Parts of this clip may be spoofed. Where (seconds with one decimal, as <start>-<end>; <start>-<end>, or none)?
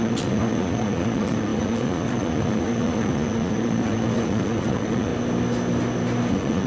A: 0.0-5.1; 6.3-6.7